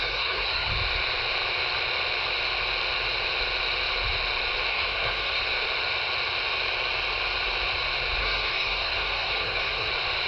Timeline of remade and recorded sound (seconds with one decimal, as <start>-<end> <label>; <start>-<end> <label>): 0.0-0.7 remade; 0.7-4.7 recorded; 4.7-5.4 remade; 5.4-8.2 recorded; 8.2-9.9 remade; 9.9-10.3 recorded